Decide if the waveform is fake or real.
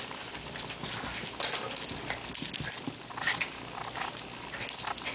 real